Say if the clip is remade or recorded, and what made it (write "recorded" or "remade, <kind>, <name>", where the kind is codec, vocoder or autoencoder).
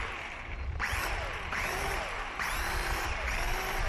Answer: remade, vocoder, BigVGAN v2